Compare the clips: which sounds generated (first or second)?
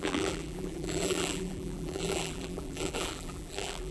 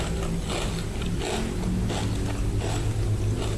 first